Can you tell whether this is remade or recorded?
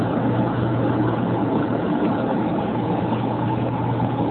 remade